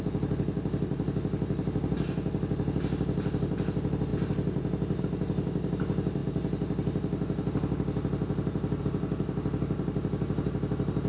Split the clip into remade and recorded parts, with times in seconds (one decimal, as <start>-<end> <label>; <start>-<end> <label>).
0.0-11.1 recorded